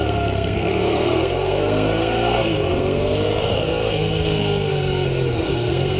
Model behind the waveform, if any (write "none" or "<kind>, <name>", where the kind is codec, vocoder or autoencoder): codec, SNAC